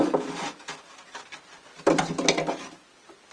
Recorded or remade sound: recorded